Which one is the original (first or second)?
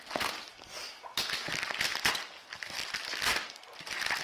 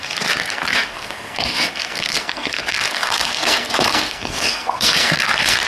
first